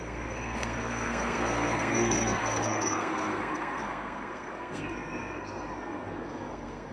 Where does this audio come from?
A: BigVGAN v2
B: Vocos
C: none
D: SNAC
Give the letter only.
D